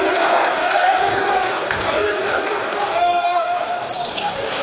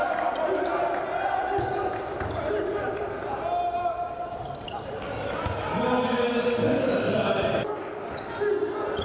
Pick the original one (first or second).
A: second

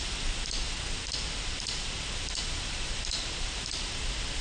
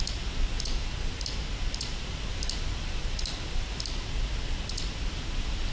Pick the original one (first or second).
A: second